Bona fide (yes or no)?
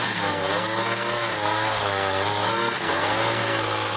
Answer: no